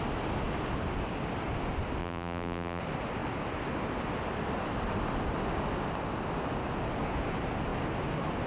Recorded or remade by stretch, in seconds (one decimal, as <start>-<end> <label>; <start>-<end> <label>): 0.0-2.0 recorded; 2.0-2.8 remade; 2.8-8.5 recorded